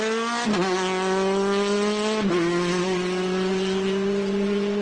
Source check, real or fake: real